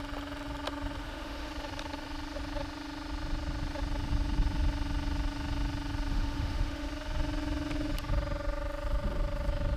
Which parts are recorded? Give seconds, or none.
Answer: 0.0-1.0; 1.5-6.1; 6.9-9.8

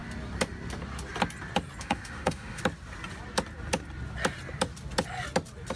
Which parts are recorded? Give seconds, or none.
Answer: 0.0-1.8; 2.6-5.8

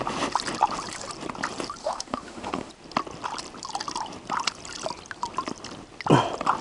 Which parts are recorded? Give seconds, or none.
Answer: 0.0-1.8; 2.7-6.6